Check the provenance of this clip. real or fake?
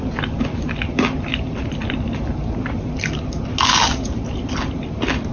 real